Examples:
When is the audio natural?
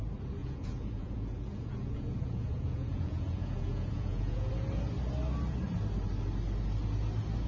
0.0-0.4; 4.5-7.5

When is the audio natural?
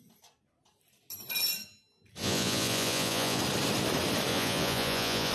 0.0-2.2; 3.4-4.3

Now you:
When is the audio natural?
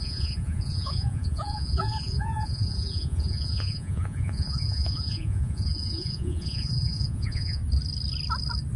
7.6-8.8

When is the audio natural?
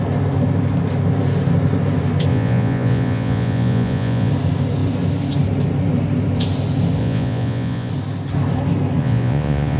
0.0-2.3; 4.3-7.0; 7.9-9.0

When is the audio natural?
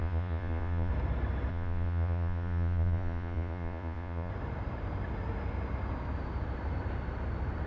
0.9-1.5; 4.3-7.7